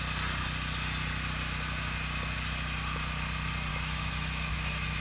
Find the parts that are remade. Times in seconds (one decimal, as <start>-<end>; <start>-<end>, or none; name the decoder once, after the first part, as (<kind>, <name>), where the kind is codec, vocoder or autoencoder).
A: 3.7-5.0 (autoencoder, DAC-VAE)